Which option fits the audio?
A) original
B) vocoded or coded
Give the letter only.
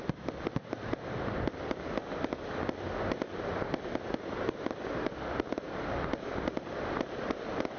A